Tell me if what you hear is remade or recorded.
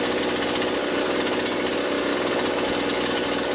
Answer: recorded